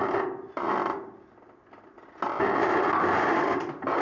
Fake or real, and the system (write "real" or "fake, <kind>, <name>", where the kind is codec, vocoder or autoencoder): real